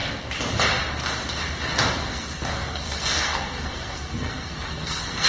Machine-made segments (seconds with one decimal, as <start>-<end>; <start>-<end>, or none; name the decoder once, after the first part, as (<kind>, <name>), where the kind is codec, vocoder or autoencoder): 2.0-5.3 (codec, SNAC)